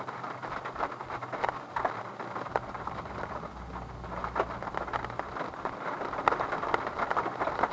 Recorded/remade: recorded